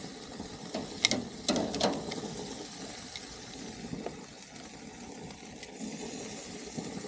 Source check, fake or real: real